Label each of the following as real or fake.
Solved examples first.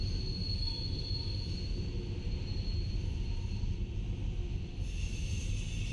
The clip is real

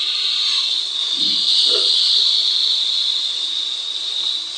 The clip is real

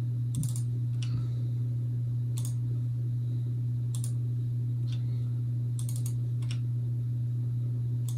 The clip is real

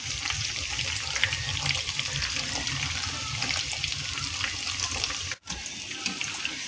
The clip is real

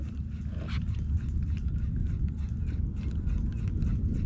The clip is real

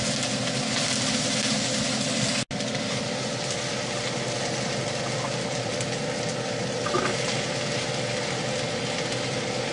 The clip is real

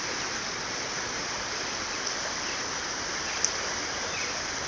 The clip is real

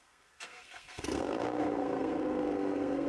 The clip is fake